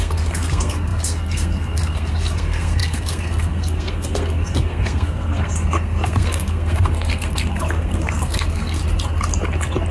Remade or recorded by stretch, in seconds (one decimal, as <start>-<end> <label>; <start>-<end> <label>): 0.0-8.8 remade; 8.8-9.9 recorded